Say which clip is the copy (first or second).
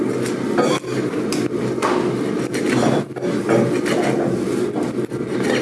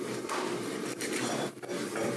second